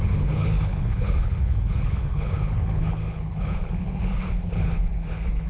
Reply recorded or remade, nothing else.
remade